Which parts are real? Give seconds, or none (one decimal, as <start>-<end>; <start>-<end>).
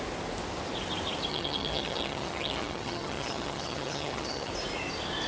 0.0-1.3; 4.5-5.3